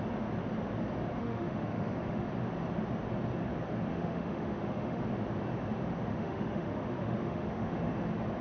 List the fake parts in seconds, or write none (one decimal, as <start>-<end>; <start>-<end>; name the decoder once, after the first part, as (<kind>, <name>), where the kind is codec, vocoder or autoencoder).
1.2-2.3 (autoencoder, DAC-VAE); 3.9-5.0; 6.1-7.8